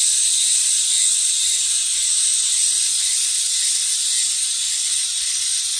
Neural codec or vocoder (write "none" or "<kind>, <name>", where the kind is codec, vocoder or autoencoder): none